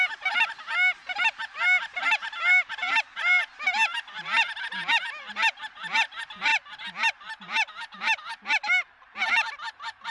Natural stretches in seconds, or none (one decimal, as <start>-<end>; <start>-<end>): 0.0-10.1